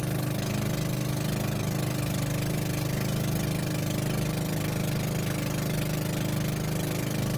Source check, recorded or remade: recorded